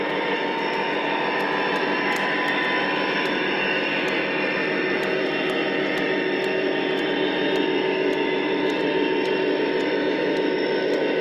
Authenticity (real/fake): real